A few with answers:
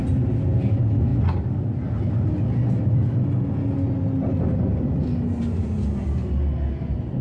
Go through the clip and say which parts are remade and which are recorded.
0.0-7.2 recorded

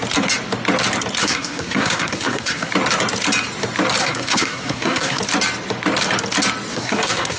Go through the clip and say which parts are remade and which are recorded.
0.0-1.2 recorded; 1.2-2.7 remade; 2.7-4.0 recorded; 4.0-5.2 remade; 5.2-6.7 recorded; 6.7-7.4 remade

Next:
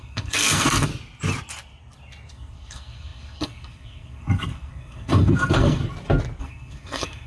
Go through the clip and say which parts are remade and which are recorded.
0.0-0.9 remade; 0.9-2.3 recorded; 2.3-5.8 remade; 5.8-6.4 recorded; 6.4-7.3 remade

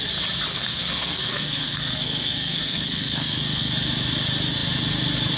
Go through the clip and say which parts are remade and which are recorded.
0.0-0.5 recorded; 0.5-3.7 remade; 3.7-5.4 recorded